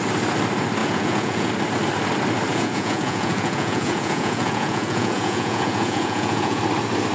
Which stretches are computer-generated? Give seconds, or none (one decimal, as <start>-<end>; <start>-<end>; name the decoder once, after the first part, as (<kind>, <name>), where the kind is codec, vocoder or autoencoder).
0.8-1.5 (vocoder, Vocos); 2.5-6.6